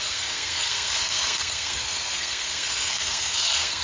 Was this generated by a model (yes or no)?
yes